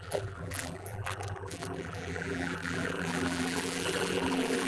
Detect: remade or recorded remade